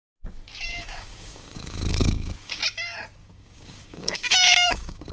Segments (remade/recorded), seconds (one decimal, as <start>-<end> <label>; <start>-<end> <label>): 0.0-0.7 recorded; 0.7-2.6 remade; 2.6-3.2 recorded; 3.2-5.1 remade